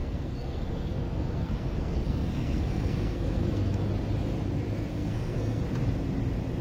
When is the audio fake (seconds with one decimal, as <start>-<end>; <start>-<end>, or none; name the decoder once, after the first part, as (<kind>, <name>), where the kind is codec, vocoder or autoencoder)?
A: 0.0-3.8 (codec, SNAC); 4.9-5.6